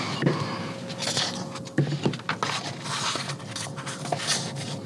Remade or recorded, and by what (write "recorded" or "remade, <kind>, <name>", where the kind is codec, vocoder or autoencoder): recorded